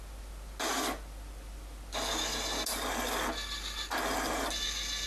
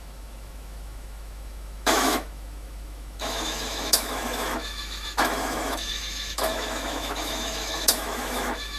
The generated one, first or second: second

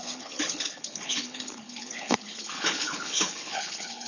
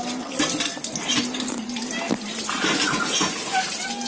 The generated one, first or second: first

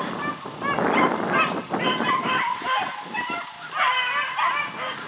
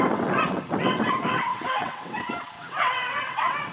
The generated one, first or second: second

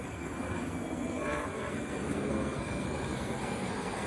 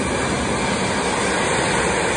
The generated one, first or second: first